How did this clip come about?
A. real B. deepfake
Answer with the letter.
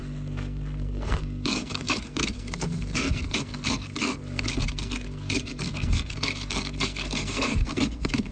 B